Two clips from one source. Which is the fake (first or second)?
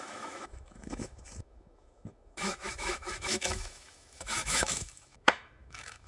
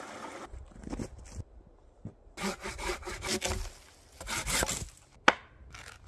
first